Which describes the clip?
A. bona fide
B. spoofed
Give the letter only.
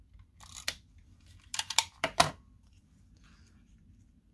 B